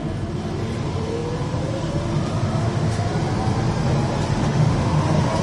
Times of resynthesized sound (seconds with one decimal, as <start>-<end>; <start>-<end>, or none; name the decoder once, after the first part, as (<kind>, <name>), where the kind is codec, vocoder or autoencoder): 2.6-3.1 (autoencoder, DAC-VAE); 4.4-5.0